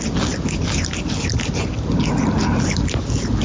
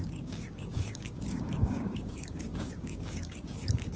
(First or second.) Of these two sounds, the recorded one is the first